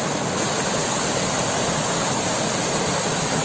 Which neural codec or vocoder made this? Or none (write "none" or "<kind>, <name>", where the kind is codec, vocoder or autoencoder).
none